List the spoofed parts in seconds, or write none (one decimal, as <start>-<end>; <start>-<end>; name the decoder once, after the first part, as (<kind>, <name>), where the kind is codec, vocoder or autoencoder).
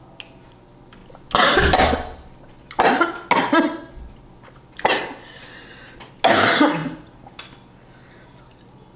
6.8-7.4 (vocoder, BigVGAN v2)